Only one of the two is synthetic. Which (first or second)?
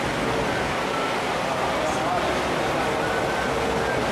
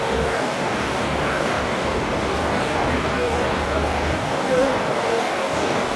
second